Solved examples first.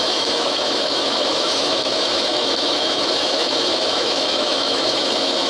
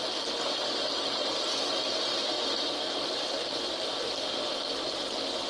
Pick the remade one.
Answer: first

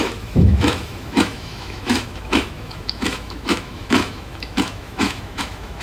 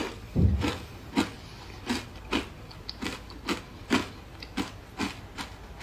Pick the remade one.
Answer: first